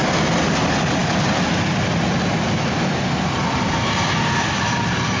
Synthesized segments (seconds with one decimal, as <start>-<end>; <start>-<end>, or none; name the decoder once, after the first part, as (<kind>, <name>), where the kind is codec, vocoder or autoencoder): none